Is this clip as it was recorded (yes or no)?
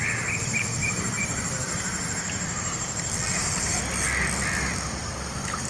no